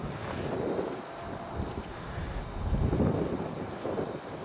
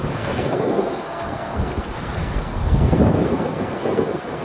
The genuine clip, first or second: first